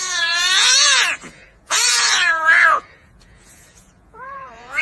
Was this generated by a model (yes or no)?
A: yes